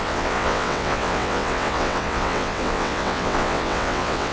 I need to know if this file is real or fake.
fake